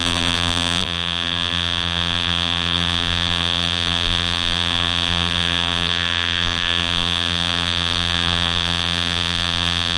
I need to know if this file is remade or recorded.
remade